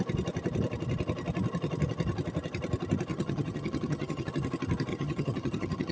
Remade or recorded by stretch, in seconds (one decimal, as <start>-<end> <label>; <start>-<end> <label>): 0.0-3.1 recorded; 3.1-4.3 remade; 4.3-4.9 recorded; 4.9-5.9 remade